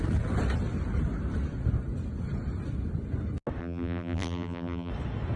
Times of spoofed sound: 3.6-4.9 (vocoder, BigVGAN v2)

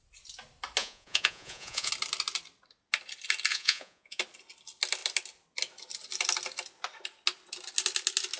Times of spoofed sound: 0.8-1.9 (vocoder, Vocos); 3.5-4.2